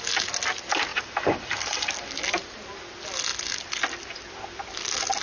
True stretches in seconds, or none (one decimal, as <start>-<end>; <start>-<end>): 0.0-0.9; 1.9-5.2